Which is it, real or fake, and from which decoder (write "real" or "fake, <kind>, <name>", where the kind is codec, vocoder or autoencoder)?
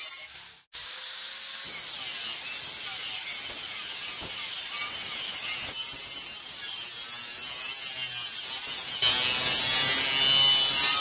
real